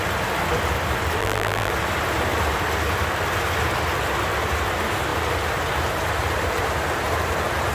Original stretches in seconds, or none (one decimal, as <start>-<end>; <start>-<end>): 0.0-1.2; 1.7-7.7